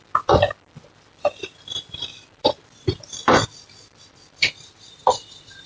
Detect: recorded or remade remade